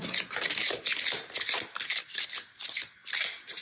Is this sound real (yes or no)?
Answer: yes